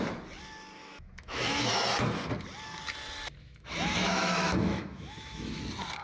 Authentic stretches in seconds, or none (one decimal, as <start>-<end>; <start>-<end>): 0.0-0.8; 1.7-3.4; 5.6-6.0